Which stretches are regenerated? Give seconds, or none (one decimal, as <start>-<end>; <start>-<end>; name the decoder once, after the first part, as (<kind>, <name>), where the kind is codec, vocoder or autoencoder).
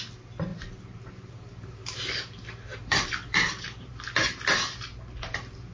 0.5-3.9 (vocoder, BigVGAN v2)